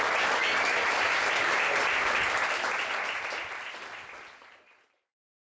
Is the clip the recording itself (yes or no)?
yes